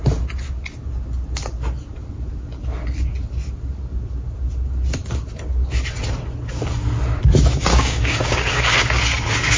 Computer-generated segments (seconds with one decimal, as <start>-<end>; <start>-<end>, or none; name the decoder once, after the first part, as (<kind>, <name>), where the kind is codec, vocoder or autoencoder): 7.7-9.0 (codec, DAC)